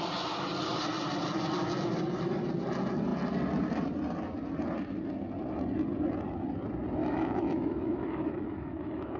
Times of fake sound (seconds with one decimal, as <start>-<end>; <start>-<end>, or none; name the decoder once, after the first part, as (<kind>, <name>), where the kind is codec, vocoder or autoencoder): 7.0-9.2 (autoencoder, DAC-VAE)